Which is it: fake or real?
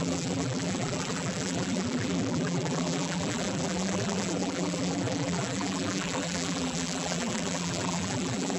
fake